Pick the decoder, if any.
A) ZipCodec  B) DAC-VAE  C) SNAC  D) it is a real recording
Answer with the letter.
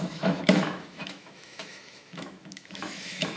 B